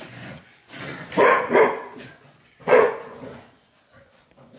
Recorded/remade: remade